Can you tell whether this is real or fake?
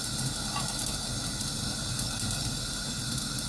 real